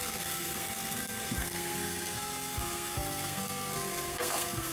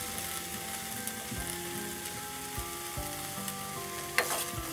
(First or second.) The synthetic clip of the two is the first